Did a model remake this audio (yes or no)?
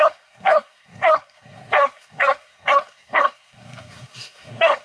yes